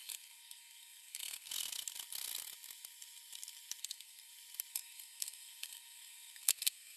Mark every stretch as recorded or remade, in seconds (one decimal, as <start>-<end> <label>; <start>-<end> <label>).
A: 0.0-1.5 remade; 1.5-3.8 recorded; 3.8-4.3 remade; 4.3-4.7 recorded; 4.7-7.0 remade